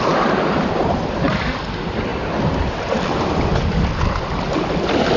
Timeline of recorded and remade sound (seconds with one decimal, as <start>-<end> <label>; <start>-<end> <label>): 0.0-5.2 recorded